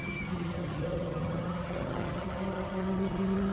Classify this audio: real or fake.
fake